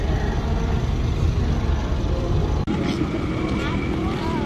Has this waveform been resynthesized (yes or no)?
no